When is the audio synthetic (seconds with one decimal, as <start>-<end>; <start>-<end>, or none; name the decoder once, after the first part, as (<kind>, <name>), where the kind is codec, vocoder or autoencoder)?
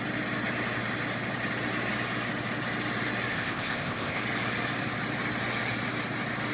3.3-4.2 (codec, ZipCodec)